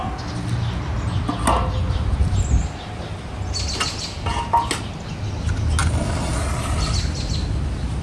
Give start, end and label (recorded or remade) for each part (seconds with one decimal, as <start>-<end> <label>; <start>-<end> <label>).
0.0-8.0 recorded